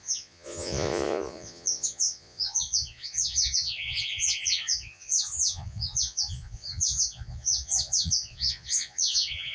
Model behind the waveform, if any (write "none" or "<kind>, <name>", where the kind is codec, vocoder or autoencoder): vocoder, Vocos